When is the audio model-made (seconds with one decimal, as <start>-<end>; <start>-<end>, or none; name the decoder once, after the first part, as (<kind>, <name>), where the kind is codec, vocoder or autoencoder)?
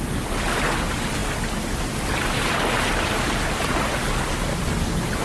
none